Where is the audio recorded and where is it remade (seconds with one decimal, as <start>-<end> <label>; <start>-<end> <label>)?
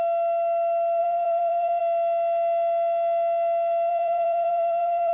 0.0-1.0 recorded; 1.0-1.8 remade; 1.8-3.9 recorded; 3.9-5.1 remade